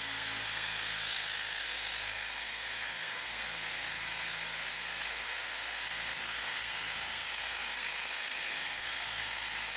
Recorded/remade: remade